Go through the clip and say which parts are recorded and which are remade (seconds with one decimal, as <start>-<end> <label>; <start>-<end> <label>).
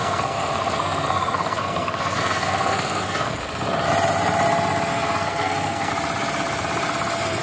0.0-3.4 remade; 3.4-4.9 recorded; 4.9-5.9 remade; 5.9-7.4 recorded